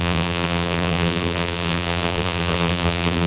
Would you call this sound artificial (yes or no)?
yes